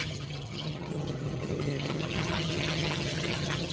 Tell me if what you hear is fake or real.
fake